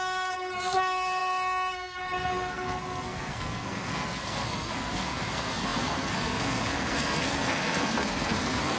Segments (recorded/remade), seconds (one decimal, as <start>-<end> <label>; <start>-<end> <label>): 0.0-8.8 remade